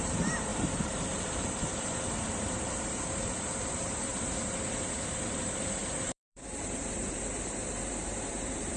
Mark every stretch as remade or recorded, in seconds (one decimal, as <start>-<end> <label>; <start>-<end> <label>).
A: 0.0-4.1 remade; 4.1-5.1 recorded; 5.1-8.8 remade